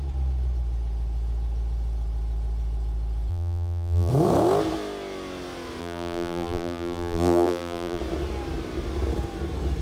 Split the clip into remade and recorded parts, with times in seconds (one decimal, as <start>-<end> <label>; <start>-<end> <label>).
0.0-3.3 recorded; 3.3-4.1 remade; 4.1-5.8 recorded; 5.8-8.0 remade; 8.0-9.8 recorded